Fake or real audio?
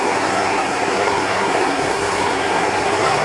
fake